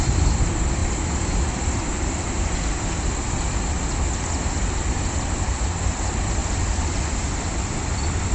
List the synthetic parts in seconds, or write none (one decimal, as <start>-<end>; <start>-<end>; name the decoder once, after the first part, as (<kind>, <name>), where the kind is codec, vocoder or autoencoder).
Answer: 0.8-3.6 (vocoder, BigVGAN v2); 6.4-7.9